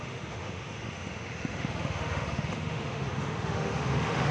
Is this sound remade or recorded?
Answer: remade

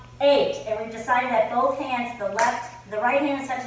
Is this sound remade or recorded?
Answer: recorded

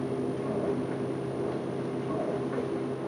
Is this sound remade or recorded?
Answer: recorded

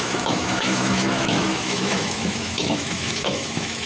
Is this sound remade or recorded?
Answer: remade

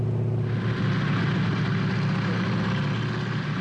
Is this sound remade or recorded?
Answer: recorded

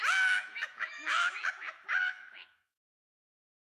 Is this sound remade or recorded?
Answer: remade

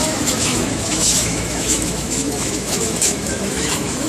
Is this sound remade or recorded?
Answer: remade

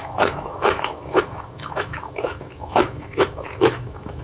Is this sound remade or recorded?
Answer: remade